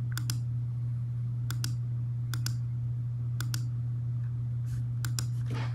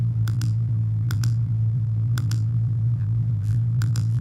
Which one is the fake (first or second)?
second